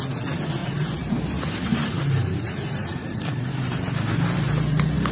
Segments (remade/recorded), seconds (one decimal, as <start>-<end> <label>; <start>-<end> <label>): 0.0-0.6 recorded; 0.6-2.0 remade; 2.0-2.9 recorded; 2.9-3.8 remade; 3.8-5.1 recorded